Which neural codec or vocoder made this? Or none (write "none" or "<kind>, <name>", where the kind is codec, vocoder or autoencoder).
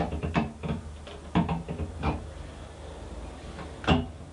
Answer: none